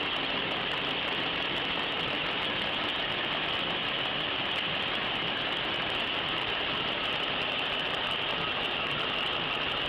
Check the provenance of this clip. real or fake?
real